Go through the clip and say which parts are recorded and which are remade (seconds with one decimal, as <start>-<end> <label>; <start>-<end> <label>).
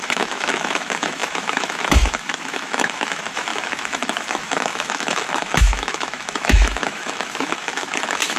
0.0-8.4 remade